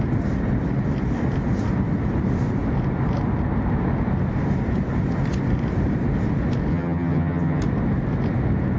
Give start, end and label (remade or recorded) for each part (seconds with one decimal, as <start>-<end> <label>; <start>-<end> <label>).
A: 0.0-6.7 recorded; 6.7-7.6 remade; 7.6-8.8 recorded